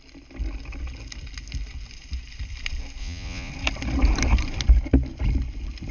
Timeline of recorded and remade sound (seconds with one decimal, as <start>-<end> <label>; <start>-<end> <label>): 0.0-3.0 recorded; 3.0-3.5 remade; 3.5-5.9 recorded